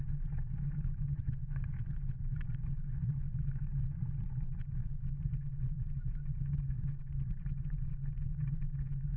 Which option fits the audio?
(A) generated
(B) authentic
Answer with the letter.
A